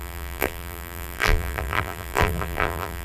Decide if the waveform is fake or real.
fake